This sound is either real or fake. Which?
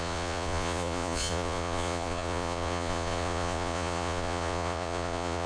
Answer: fake